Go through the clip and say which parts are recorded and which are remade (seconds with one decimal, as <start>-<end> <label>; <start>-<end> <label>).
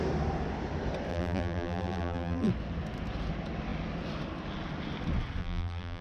0.0-1.1 recorded; 1.1-2.5 remade; 2.5-5.4 recorded; 5.4-6.0 remade